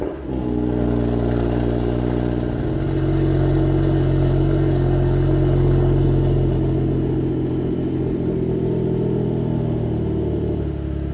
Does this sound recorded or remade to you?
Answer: recorded